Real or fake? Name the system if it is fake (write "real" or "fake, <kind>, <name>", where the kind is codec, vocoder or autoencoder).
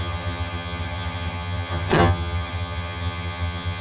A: fake, vocoder, HiFi-GAN